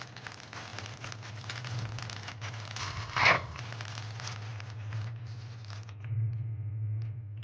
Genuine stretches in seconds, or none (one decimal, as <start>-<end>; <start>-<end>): 0.0-2.8; 3.6-7.4